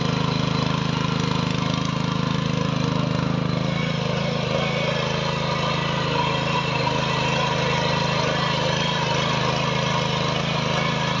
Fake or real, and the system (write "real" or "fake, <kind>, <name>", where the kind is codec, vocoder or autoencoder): real